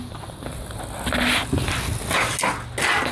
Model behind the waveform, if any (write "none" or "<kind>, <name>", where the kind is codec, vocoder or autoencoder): none